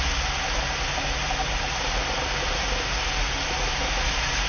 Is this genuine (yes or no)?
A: yes